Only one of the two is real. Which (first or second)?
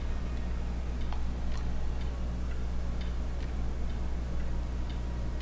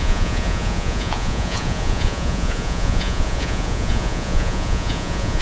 first